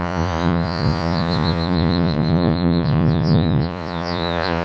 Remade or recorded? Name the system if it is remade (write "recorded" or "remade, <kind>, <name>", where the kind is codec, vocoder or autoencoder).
remade, vocoder, Vocos